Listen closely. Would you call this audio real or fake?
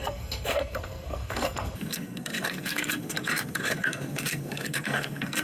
fake